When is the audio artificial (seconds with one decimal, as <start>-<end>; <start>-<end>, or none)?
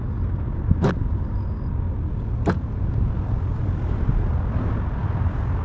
none